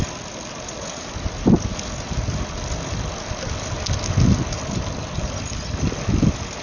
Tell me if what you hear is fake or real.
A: real